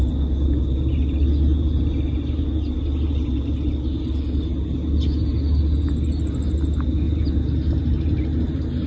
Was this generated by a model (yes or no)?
no